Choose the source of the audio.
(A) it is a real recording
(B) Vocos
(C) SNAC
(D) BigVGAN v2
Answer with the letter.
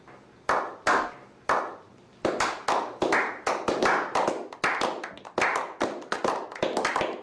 A